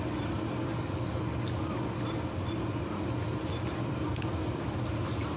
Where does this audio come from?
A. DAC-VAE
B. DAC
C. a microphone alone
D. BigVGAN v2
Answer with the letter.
C